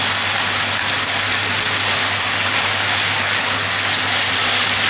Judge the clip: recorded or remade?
recorded